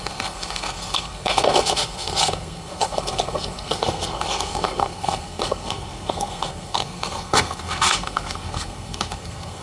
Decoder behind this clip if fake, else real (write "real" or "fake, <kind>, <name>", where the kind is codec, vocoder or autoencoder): fake, codec, SNAC